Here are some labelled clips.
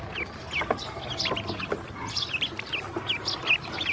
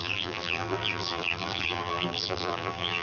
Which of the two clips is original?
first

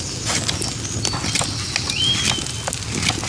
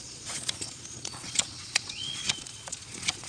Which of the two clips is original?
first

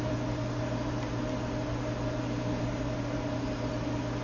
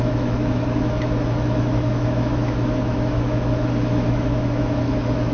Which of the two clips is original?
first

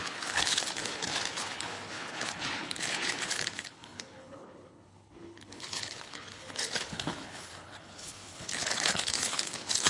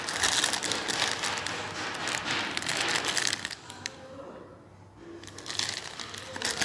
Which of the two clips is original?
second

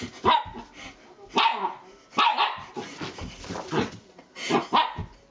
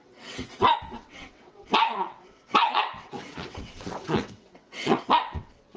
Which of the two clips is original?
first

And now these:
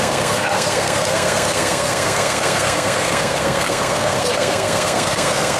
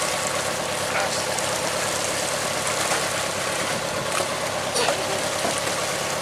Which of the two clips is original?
second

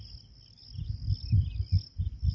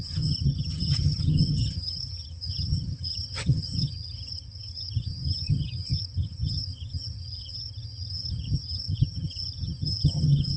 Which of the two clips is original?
first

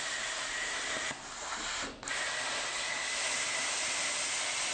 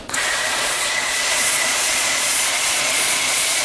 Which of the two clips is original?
first